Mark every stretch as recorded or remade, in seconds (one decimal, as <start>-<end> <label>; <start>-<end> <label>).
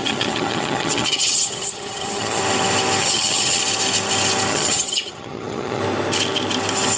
0.0-2.4 remade; 2.4-3.0 recorded; 3.0-3.6 remade; 3.6-4.5 recorded; 4.5-5.8 remade; 5.8-7.0 recorded